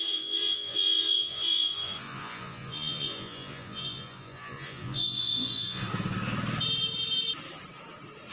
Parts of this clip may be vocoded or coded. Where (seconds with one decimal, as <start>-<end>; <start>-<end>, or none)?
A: 0.0-5.8